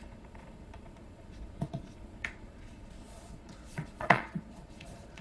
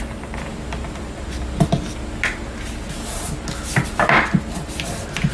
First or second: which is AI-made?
first